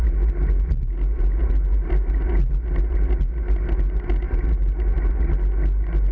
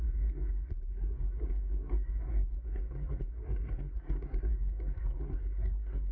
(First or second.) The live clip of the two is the first